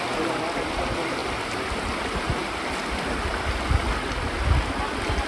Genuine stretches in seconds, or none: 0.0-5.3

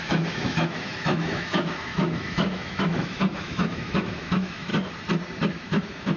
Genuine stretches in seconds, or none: 4.7-5.5

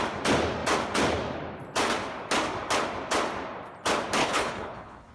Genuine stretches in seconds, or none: 0.0-4.2

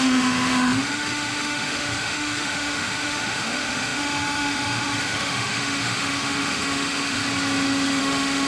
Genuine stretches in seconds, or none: 7.2-8.0

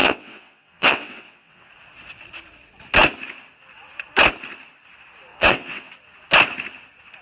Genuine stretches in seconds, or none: 1.7-5.3; 5.9-7.2

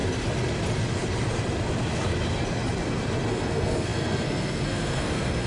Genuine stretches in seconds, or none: 0.0-3.3

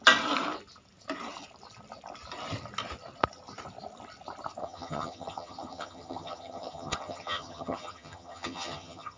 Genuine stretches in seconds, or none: 0.0-4.6